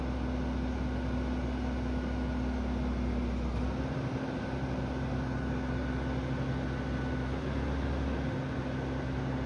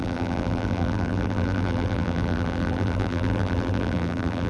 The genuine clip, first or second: first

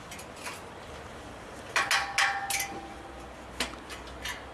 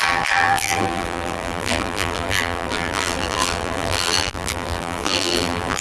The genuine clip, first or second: first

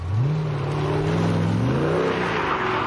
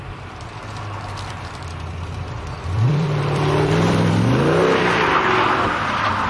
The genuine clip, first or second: first